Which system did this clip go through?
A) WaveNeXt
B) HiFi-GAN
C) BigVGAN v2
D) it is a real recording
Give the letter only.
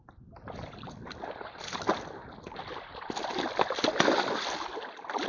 D